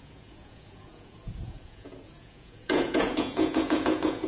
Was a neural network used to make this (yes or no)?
yes